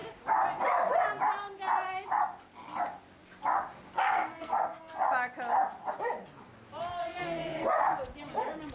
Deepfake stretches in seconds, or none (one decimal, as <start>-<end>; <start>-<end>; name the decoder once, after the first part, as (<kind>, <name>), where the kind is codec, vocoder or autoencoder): 4.0-4.9 (codec, SNAC); 7.0-7.7